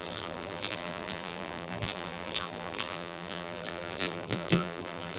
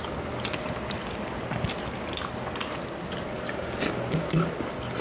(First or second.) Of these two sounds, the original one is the second